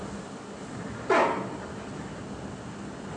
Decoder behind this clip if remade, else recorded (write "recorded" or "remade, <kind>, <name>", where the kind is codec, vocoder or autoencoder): recorded